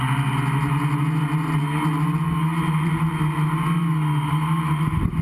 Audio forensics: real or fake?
real